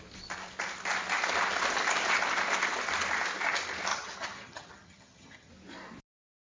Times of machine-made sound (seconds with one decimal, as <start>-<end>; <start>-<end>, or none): 3.9-5.5